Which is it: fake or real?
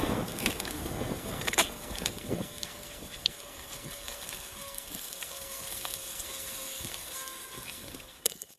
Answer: fake